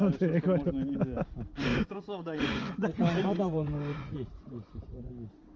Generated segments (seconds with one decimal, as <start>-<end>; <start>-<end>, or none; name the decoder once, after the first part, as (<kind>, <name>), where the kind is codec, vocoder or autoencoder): 1.7-5.1 (vocoder, Vocos)

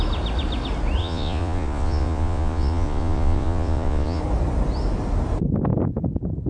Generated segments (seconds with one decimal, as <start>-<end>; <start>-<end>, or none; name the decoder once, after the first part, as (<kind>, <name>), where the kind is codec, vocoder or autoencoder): 1.0-4.2 (vocoder, Vocos)

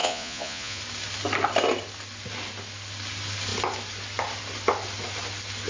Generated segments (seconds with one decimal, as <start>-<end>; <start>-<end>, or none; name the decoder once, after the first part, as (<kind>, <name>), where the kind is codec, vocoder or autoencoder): 0.0-0.8 (vocoder, Vocos)

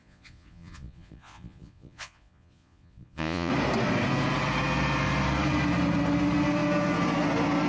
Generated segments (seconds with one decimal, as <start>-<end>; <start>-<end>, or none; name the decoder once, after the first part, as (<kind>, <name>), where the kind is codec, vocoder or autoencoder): 0.0-3.5 (vocoder, Vocos)